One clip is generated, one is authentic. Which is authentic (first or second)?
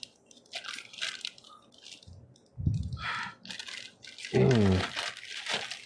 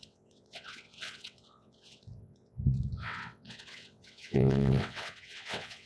first